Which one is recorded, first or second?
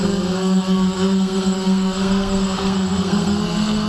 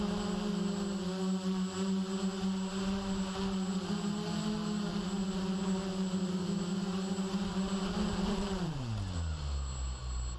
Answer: second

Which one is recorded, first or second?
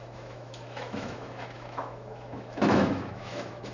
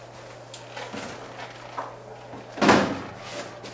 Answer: second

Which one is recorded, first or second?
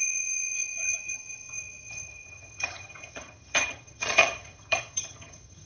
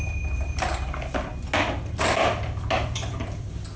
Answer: second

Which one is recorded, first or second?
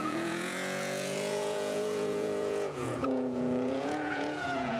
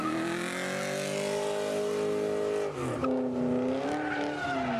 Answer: second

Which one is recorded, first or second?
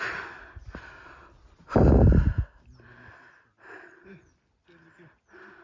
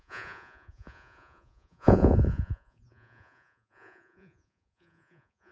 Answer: first